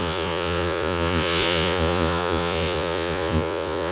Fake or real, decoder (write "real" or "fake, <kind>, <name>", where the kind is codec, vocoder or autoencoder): fake, vocoder, Vocos